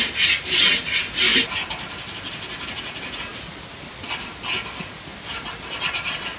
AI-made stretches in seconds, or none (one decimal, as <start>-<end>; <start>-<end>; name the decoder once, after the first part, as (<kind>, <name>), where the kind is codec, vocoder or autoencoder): none